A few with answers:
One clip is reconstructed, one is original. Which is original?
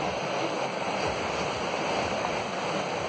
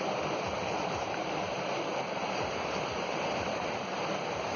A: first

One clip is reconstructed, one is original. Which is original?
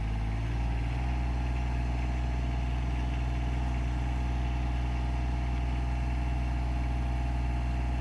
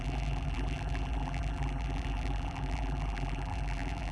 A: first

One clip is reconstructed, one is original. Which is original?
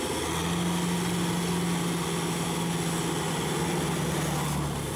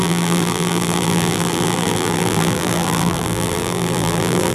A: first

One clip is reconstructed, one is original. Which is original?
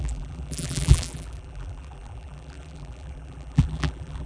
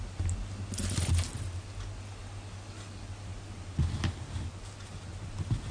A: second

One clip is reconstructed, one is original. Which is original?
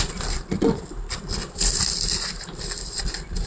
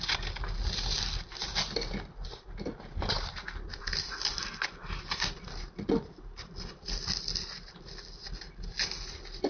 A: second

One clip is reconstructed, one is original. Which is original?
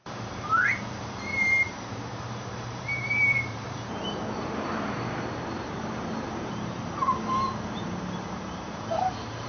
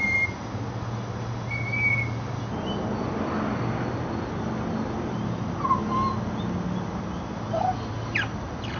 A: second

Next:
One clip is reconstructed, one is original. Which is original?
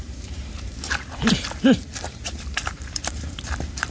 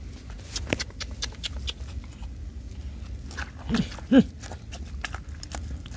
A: second